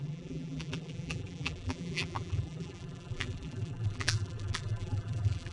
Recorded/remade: remade